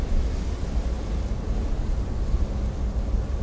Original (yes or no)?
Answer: yes